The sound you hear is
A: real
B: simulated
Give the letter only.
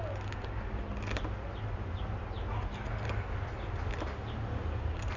A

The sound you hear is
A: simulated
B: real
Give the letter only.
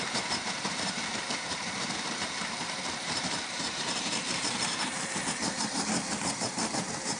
A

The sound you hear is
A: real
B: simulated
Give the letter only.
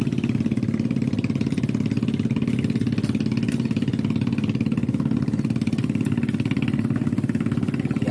A